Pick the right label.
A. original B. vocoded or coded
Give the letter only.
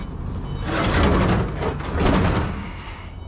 A